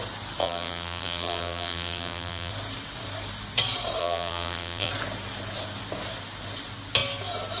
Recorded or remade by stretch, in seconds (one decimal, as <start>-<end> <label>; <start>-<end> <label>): 0.0-0.4 recorded; 0.4-2.5 remade; 2.5-4.0 recorded; 4.0-4.9 remade; 4.9-7.6 recorded